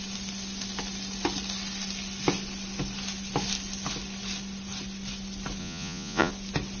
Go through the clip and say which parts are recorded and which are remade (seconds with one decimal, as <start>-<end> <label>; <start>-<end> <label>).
0.0-5.6 recorded; 5.6-6.3 remade; 6.3-6.8 recorded